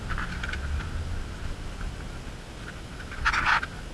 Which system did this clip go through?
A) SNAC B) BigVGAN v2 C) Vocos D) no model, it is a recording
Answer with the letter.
D